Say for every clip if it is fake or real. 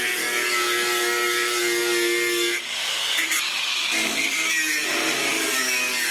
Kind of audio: fake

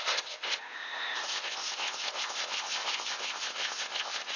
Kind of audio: fake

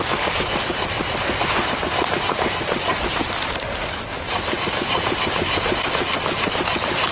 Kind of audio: real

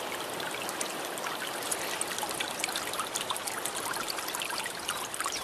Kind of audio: real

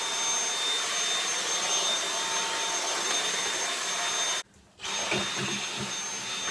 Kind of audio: real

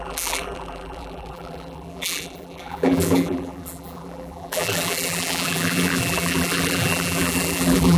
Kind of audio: fake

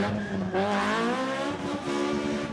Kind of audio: real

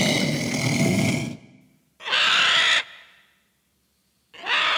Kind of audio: real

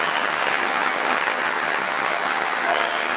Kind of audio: fake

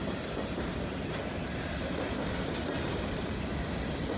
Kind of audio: real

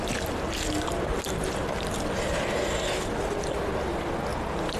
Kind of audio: real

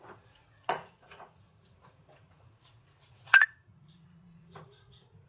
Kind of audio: fake